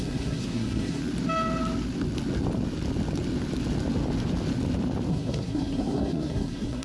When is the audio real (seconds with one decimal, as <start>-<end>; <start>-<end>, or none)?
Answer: 1.0-5.1